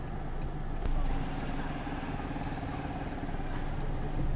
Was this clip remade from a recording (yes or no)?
no